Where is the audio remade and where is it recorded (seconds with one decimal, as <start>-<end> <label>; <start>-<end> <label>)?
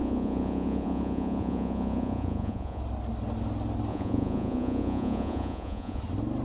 0.0-2.8 remade; 2.8-3.9 recorded; 3.9-6.0 remade; 6.0-6.4 recorded